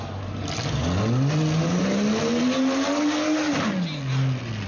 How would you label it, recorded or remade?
recorded